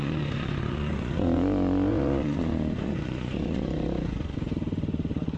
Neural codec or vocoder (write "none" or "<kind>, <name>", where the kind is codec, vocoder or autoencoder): vocoder, Vocos